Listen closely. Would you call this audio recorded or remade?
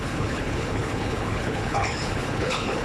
remade